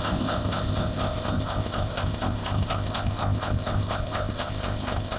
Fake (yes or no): yes